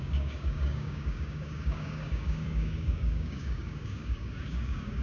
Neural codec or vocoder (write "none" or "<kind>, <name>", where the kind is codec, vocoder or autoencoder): codec, DAC